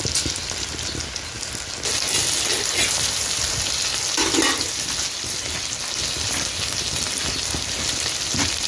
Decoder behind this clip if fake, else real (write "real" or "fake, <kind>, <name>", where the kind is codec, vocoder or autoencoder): real